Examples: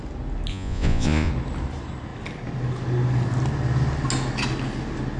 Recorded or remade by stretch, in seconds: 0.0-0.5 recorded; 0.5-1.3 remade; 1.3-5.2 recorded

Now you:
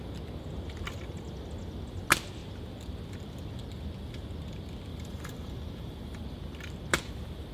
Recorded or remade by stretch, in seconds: 0.0-4.9 recorded; 4.9-6.2 remade; 6.2-7.5 recorded

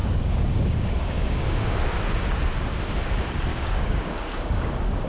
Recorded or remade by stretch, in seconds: 0.0-2.1 remade; 2.1-3.5 recorded; 3.5-5.1 remade

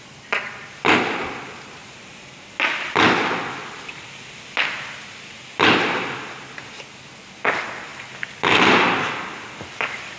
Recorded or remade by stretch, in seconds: 0.0-10.2 recorded

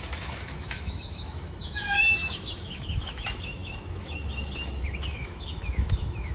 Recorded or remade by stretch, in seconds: 0.0-6.3 remade